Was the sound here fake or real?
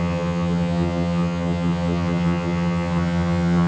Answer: fake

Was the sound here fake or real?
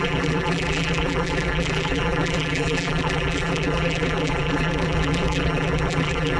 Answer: fake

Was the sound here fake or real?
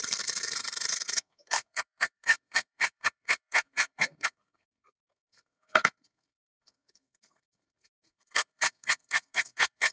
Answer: fake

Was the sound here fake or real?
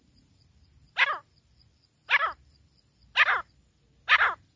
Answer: real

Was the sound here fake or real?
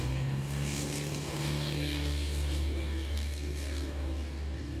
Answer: fake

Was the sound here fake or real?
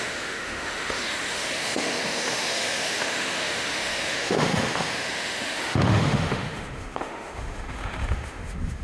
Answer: fake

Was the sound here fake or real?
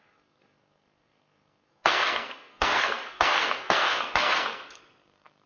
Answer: fake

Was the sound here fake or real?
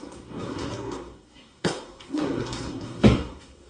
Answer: fake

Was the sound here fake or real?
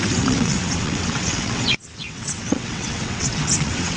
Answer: fake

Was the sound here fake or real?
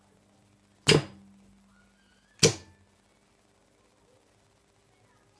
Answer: real